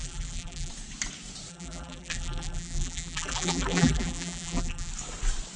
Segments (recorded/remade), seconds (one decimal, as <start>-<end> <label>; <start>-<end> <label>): 0.0-0.7 remade; 0.7-1.5 recorded; 1.5-4.9 remade; 4.9-5.6 recorded